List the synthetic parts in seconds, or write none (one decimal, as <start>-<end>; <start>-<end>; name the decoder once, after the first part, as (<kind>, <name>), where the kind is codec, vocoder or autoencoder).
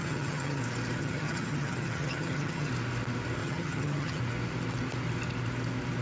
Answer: 0.0-0.6 (vocoder, HiFi-GAN); 1.0-2.7; 3.4-4.2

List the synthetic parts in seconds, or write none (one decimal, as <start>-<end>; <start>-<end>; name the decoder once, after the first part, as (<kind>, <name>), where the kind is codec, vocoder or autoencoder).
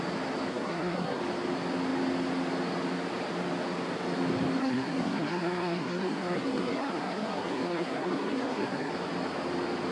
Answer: 0.5-1.2 (codec, SNAC); 4.6-8.9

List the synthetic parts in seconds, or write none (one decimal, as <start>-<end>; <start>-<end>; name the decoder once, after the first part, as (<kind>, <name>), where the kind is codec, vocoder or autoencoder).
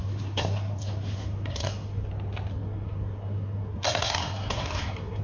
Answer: 0.0-2.1 (codec, SNAC); 2.5-5.2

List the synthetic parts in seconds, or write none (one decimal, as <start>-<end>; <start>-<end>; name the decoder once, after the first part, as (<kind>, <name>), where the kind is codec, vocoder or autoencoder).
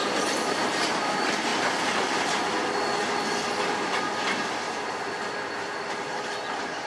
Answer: 0.0-1.5 (vocoder, BigVGAN v2); 5.6-6.9